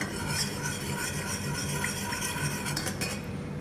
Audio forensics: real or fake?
real